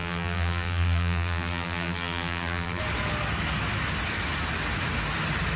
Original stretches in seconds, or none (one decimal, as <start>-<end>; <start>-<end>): 2.8-5.6